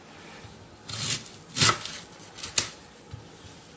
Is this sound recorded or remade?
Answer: recorded